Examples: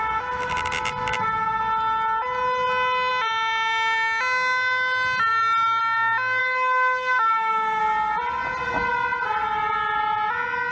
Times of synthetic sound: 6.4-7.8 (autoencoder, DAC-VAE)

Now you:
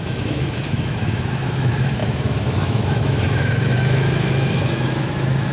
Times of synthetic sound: 0.0-5.5 (autoencoder, DAC-VAE)

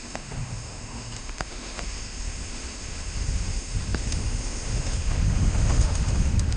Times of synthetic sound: 0.0-6.6 (autoencoder, DAC-VAE)

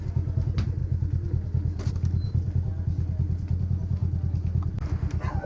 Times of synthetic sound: none

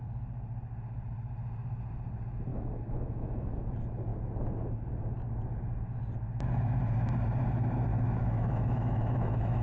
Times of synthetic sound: 2.5-3.6 (autoencoder, DAC-VAE); 7.9-9.6

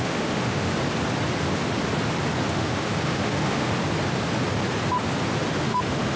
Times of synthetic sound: 0.0-0.7 (autoencoder, DAC-VAE); 2.5-3.7; 5.6-6.2

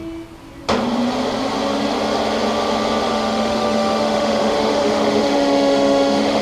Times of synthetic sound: 3.1-6.4 (autoencoder, DAC-VAE)

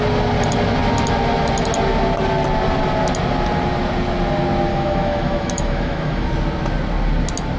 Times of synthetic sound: 4.7-6.3 (autoencoder, DAC-VAE)